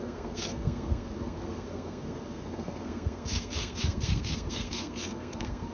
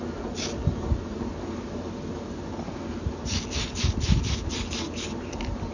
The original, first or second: second